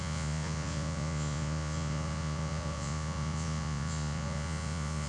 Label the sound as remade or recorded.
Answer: remade